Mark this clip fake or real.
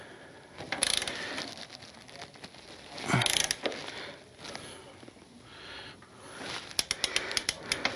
real